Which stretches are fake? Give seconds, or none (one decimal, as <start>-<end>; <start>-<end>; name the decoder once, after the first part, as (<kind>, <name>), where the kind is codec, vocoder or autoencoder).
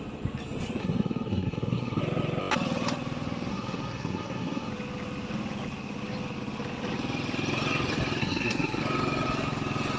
0.8-2.0 (codec, SNAC); 3.5-4.7; 8.2-8.8